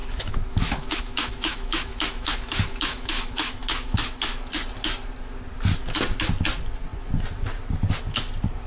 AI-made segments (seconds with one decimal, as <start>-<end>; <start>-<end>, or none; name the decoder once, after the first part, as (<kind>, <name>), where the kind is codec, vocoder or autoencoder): 0.0-4.2 (autoencoder, DAC-VAE)